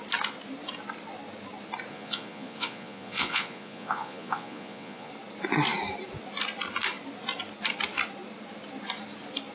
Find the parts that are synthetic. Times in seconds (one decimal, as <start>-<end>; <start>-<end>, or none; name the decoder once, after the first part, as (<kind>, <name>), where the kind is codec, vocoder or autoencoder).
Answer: 1.9-5.1 (vocoder, Vocos)